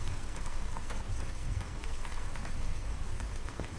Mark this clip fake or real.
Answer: fake